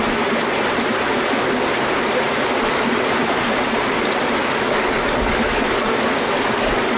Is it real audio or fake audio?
real